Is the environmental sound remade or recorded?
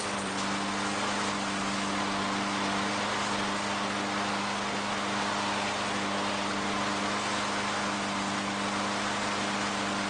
recorded